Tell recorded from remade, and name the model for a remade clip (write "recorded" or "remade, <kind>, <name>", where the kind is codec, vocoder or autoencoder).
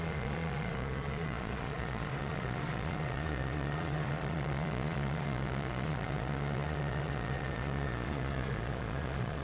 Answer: remade, vocoder, Vocos